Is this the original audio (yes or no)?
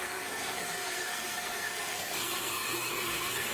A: no